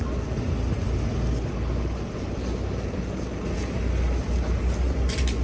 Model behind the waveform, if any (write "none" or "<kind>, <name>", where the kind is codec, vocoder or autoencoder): none